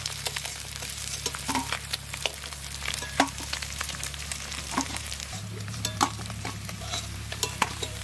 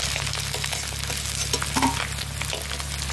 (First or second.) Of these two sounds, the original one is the second